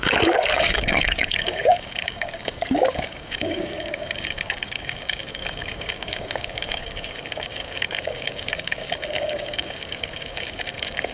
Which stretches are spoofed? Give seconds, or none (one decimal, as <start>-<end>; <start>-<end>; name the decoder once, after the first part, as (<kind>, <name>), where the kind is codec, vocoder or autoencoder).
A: 0.0-11.1 (codec, DAC)